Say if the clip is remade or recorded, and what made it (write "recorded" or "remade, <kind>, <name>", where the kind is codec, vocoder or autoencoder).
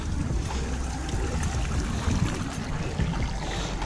recorded